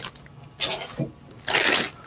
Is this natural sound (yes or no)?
yes